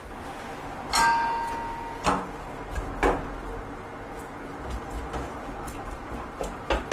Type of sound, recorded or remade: recorded